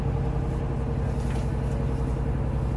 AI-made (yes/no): no